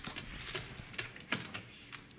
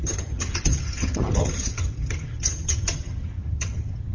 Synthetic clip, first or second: second